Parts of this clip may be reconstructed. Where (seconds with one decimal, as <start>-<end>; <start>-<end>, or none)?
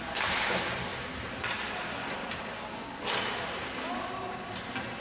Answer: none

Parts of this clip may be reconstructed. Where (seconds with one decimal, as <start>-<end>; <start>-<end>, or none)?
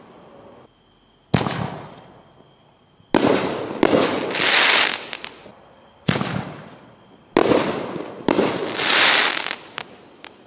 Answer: 5.5-6.8; 7.4-8.5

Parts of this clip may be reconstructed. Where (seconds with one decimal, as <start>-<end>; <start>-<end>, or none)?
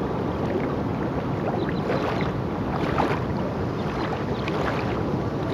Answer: none